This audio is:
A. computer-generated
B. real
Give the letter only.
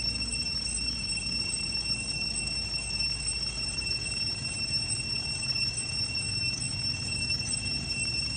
A